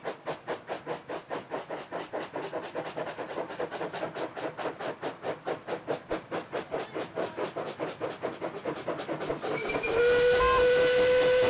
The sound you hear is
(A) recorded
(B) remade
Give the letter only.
A